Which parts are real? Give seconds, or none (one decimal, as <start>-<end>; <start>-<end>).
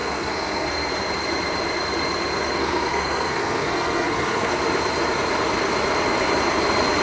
0.9-2.6; 4.6-7.0